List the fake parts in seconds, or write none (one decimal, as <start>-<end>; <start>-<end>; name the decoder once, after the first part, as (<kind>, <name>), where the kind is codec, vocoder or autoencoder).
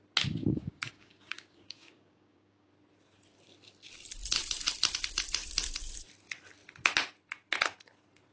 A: 0.4-2.7 (codec, DAC)